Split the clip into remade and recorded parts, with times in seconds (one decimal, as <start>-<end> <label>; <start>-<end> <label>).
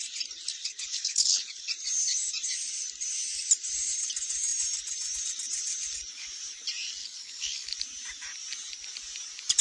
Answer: 0.0-0.6 recorded; 0.6-1.7 remade; 1.7-7.0 recorded; 7.0-7.7 remade; 7.7-9.6 recorded